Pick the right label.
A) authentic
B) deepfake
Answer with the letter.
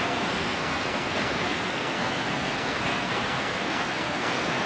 B